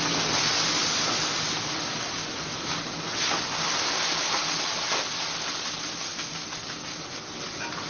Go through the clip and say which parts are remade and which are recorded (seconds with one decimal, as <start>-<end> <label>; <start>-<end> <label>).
0.0-7.9 recorded